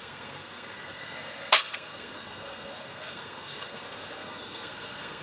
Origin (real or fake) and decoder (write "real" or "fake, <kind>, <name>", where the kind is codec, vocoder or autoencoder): fake, codec, SNAC